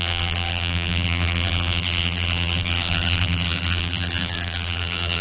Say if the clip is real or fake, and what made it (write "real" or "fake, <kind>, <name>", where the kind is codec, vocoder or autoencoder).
fake, vocoder, BigVGAN v2